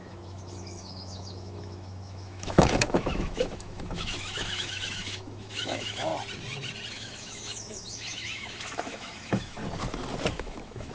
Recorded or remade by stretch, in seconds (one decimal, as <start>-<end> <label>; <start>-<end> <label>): 0.0-6.1 remade; 6.1-6.9 recorded; 6.9-9.6 remade; 9.6-10.3 recorded; 10.3-10.9 remade